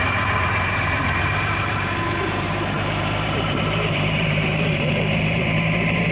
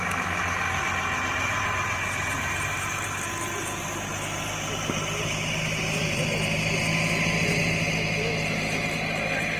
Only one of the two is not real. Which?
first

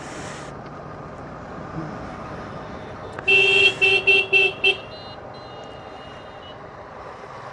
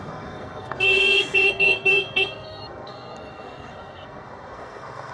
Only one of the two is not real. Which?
second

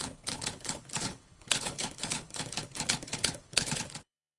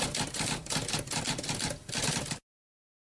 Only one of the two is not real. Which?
first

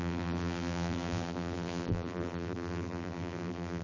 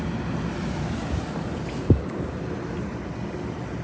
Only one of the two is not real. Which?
first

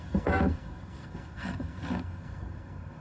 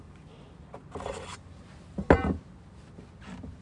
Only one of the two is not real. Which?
first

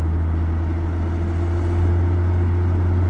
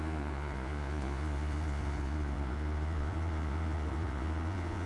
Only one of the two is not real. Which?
second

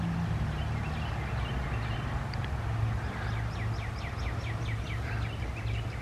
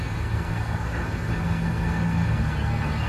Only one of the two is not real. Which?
second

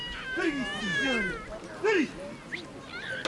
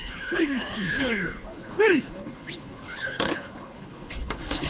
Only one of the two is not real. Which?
second